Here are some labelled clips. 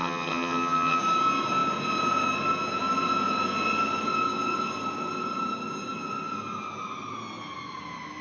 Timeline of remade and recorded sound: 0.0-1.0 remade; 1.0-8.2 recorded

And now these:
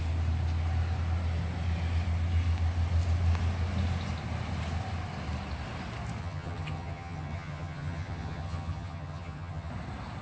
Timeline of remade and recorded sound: 0.0-6.2 recorded; 6.2-9.7 remade; 9.7-10.2 recorded

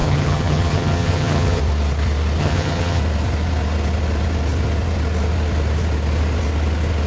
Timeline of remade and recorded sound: 0.0-1.6 remade; 1.6-2.4 recorded; 2.4-3.0 remade; 3.0-7.1 recorded

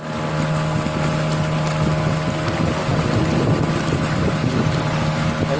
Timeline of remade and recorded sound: 0.0-5.6 recorded

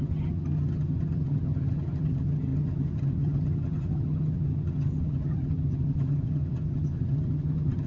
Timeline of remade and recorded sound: 0.0-7.9 remade

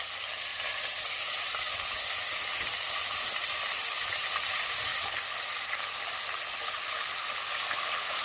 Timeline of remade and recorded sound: 0.0-8.2 recorded